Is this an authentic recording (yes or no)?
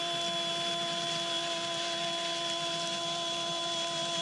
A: yes